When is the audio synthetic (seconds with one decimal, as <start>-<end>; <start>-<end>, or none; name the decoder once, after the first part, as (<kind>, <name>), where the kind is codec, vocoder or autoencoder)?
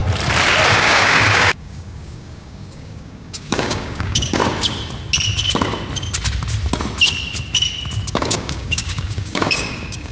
0.7-4.4 (codec, DAC); 8.1-10.1